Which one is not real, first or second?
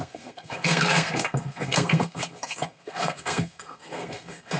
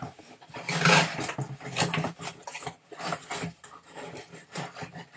first